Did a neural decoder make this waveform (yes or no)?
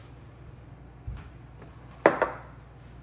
no